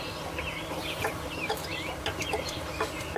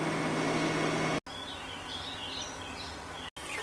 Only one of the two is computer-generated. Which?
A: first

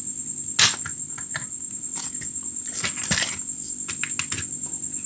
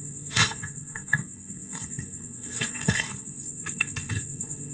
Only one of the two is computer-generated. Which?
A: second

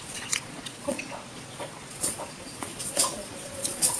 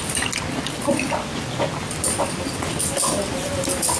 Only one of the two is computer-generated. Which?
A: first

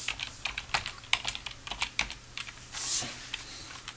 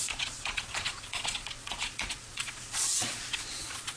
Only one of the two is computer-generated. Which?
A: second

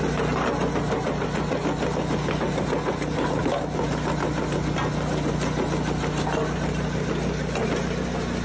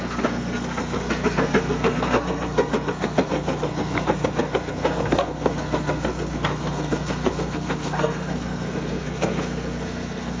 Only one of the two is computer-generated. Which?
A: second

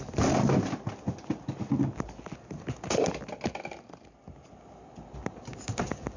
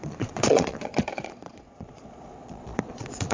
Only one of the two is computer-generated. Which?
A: second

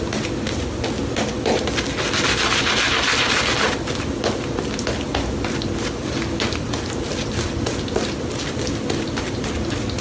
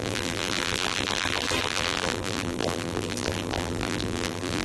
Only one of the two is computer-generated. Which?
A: second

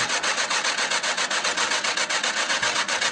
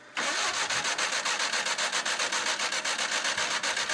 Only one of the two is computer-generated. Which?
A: first